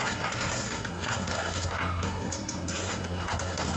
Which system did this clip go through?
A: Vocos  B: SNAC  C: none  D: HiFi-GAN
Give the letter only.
B